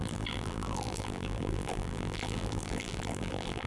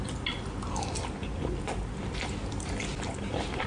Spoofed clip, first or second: first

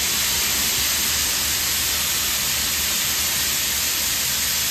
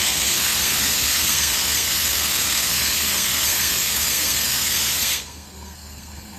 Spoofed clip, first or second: second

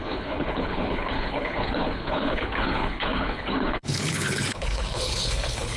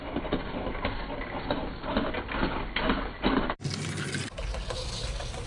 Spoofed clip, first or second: first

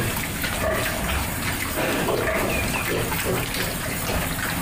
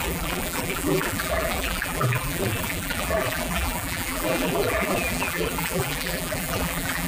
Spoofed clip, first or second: second